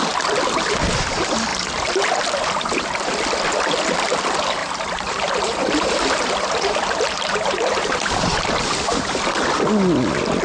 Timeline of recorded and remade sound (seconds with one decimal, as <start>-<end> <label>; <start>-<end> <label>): 0.0-4.6 recorded; 4.6-8.6 remade; 8.6-10.4 recorded